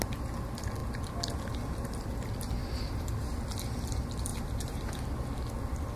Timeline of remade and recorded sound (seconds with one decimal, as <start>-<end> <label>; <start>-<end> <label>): 0.0-2.6 recorded; 2.6-3.1 remade; 3.1-4.3 recorded; 4.3-4.9 remade; 4.9-6.0 recorded